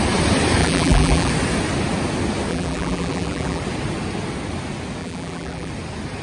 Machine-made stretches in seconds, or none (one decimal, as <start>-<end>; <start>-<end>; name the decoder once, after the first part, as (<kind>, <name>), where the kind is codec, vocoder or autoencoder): 0.6-1.3 (vocoder, BigVGAN v2); 2.5-3.6; 5.0-5.7